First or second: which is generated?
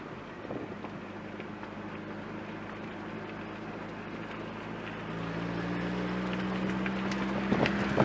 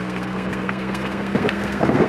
second